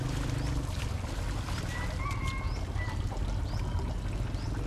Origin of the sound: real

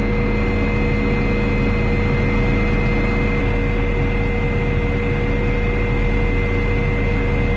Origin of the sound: real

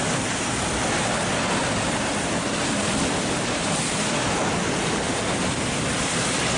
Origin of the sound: fake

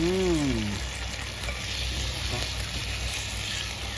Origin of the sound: real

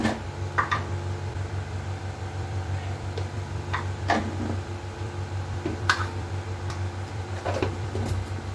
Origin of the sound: fake